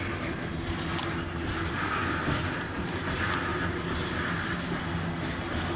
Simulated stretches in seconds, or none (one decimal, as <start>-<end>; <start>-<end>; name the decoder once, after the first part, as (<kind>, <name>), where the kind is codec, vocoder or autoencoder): none

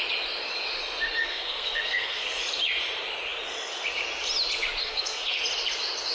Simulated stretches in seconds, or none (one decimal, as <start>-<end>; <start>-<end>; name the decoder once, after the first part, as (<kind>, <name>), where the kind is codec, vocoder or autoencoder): 1.2-2.4 (codec, SNAC); 4.8-5.4

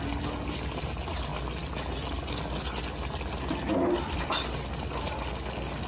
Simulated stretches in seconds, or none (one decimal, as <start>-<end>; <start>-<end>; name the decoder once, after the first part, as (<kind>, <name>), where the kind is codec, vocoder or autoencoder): none

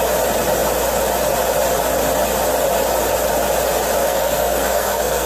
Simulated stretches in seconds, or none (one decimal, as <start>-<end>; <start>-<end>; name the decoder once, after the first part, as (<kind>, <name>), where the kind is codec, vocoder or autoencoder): 4.0-5.3 (codec, SNAC)